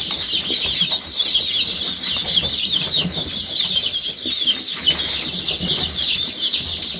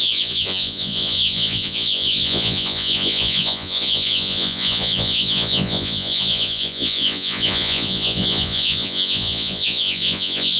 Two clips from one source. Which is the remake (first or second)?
second